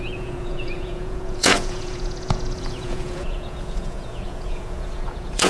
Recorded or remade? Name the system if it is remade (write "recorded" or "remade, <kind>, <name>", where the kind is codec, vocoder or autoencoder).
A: remade, vocoder, Vocos